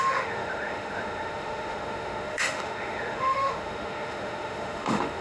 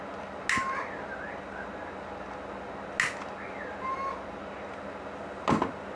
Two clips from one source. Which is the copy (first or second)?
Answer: first